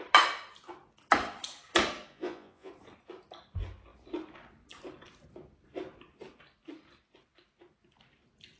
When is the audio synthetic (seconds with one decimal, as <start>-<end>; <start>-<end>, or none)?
2.1-2.7